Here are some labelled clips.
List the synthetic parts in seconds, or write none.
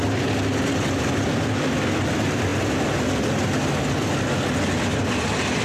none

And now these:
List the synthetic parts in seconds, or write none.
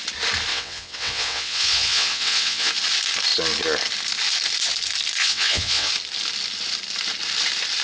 0.5-2.7 (vocoder, WaveNeXt); 5.2-5.9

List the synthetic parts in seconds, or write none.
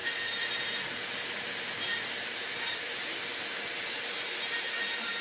none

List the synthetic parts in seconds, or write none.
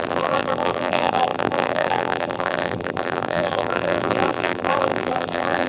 0.0-5.7 (vocoder, BigVGAN v2)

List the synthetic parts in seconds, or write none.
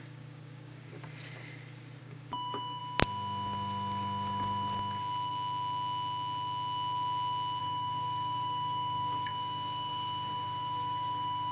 0.0-0.9 (codec, DAC); 2.0-2.8; 7.6-11.5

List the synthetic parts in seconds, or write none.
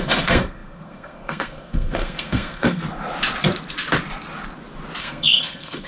0.0-2.8 (codec, SNAC); 5.0-5.9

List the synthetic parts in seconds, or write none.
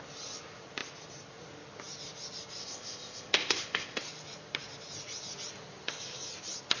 2.6-4.0 (codec, ZipCodec)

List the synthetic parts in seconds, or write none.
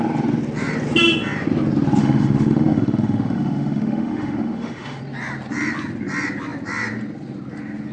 2.0-5.0 (autoencoder, DAC-VAE)